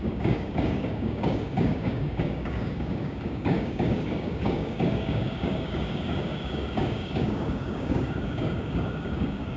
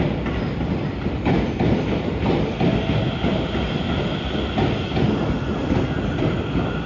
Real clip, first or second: second